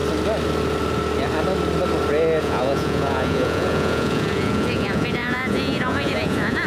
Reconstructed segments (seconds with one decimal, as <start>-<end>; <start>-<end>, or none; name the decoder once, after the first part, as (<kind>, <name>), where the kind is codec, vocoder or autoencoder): 2.4-6.7 (vocoder, Vocos)